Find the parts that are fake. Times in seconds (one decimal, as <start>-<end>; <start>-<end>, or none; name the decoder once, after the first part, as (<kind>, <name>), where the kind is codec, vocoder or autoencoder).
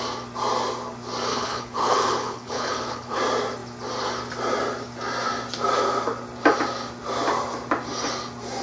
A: 1.3-3.2 (codec, HILCodec)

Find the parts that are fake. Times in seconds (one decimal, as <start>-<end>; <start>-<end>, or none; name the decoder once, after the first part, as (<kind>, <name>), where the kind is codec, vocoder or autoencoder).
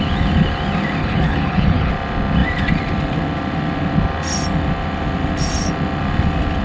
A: 1.0-1.9 (codec, HILCodec)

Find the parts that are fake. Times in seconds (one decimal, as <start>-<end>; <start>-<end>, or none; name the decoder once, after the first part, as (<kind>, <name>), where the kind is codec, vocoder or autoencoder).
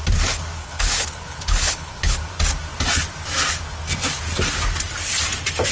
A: 0.6-2.2 (codec, HILCodec)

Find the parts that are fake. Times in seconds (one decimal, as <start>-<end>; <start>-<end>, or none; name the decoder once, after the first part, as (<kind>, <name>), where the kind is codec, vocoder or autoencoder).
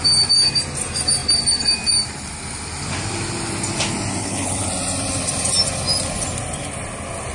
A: 4.2-4.7 (codec, HILCodec)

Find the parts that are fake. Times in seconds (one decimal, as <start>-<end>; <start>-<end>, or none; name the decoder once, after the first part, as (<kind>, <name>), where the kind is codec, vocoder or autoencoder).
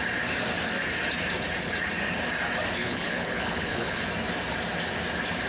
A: 2.8-4.1 (codec, HILCodec)